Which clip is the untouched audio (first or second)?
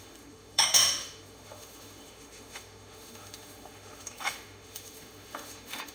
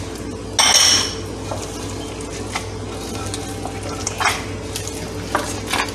second